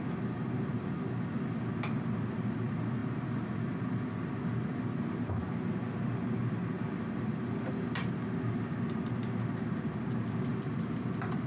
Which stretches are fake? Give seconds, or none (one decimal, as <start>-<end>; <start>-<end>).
none